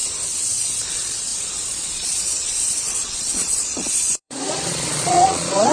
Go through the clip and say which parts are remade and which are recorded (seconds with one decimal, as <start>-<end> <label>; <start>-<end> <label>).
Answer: 0.0-0.9 recorded; 0.9-5.7 remade